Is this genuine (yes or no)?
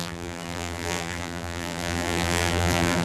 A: no